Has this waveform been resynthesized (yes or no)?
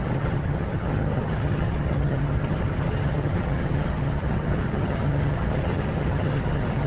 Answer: yes